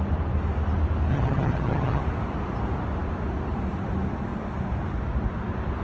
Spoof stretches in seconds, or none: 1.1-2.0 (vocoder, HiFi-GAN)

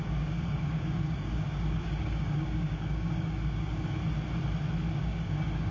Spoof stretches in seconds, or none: 0.0-4.0 (codec, DAC); 4.9-5.7